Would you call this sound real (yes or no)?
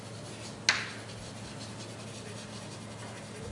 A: yes